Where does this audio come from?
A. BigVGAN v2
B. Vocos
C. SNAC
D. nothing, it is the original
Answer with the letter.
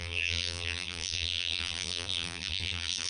A